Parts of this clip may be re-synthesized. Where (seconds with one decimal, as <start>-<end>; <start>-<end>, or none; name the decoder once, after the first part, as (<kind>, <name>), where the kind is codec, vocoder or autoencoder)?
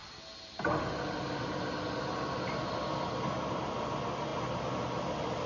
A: none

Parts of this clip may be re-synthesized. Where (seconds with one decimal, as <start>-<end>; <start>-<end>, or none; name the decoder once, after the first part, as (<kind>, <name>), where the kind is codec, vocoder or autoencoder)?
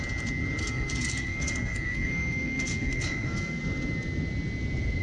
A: 0.6-3.6 (codec, SNAC)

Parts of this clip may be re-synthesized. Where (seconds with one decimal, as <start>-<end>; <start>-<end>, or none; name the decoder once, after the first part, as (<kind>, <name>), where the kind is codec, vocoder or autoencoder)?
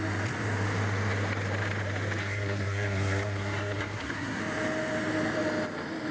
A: 2.2-4.4 (codec, SNAC)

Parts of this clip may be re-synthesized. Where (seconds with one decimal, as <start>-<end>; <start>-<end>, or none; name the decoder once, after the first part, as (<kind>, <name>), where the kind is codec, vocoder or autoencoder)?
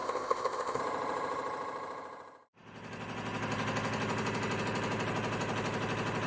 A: 0.0-0.8 (codec, ZipCodec)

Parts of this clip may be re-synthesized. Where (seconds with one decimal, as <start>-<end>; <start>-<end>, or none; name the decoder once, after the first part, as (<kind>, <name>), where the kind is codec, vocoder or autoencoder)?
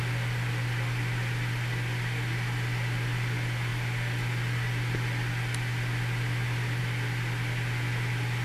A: none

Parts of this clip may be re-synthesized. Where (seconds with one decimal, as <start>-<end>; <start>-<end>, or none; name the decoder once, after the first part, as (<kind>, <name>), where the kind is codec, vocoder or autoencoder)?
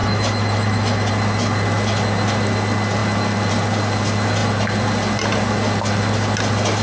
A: 0.0-1.1 (autoencoder, DAC-VAE)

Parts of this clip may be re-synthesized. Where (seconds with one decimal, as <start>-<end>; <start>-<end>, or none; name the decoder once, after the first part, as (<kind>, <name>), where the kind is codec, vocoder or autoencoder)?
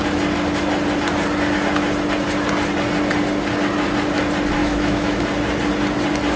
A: 4.6-5.2 (autoencoder, DAC-VAE)